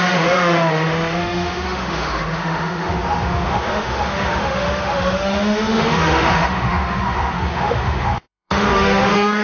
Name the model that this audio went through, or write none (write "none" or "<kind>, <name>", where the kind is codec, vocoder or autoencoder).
autoencoder, DAC-VAE